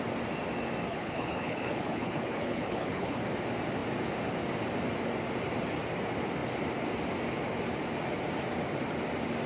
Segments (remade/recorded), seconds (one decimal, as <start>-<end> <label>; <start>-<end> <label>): 0.0-0.9 recorded; 0.9-3.2 remade; 3.2-9.5 recorded